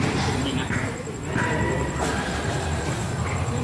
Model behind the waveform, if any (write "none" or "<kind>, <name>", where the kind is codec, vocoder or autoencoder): none